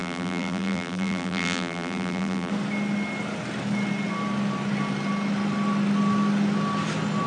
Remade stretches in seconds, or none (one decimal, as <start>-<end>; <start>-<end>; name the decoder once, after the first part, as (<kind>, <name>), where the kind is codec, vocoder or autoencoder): 0.0-2.5 (vocoder, BigVGAN v2)